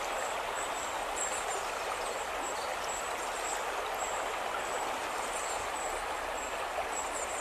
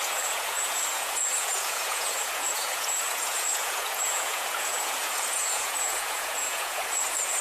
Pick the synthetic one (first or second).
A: second